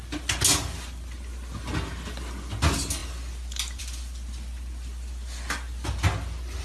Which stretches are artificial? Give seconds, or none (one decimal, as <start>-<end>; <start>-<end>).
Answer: none